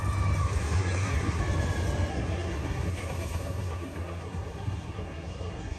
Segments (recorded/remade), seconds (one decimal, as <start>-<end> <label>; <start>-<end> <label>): 0.0-0.4 recorded; 0.4-1.4 remade; 1.4-2.1 recorded; 2.1-5.8 remade